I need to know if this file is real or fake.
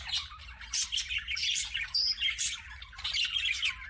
real